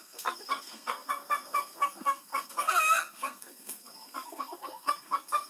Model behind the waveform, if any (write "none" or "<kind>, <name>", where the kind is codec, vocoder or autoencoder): codec, SNAC